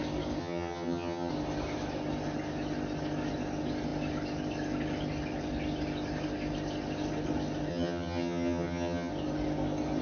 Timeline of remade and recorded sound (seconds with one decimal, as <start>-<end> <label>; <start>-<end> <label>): 0.0-0.4 recorded; 0.4-1.3 remade; 1.3-7.7 recorded; 7.7-9.1 remade; 9.1-10.0 recorded